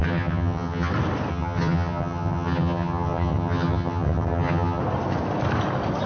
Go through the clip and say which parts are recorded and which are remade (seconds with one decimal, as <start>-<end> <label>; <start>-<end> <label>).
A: 0.0-0.9 remade; 0.9-1.3 recorded; 1.3-4.8 remade; 4.8-6.1 recorded